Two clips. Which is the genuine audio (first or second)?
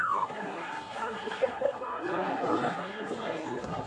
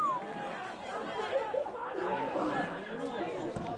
second